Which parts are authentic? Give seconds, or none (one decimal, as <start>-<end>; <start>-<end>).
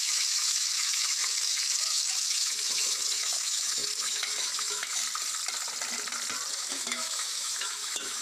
5.0-6.5